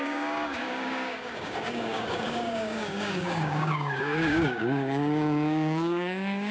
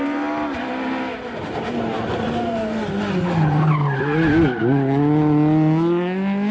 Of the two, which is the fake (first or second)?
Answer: first